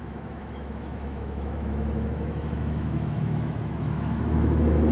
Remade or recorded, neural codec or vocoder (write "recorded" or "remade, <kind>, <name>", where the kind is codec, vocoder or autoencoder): remade, autoencoder, DAC-VAE